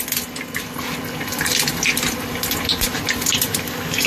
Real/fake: real